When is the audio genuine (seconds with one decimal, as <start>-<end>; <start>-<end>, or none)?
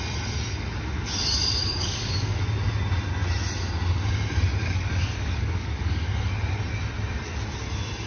0.0-1.6; 2.4-4.6; 6.3-8.1